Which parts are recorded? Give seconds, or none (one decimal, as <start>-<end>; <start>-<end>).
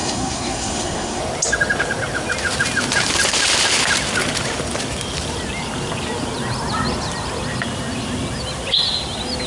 1.2-9.5